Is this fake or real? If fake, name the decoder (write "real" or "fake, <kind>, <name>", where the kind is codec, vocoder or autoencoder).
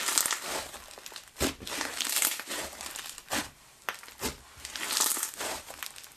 fake, vocoder, BigVGAN v2